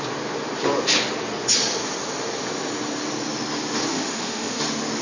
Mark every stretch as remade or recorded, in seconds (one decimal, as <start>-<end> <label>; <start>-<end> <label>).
0.0-3.9 recorded; 3.9-4.6 remade; 4.6-5.0 recorded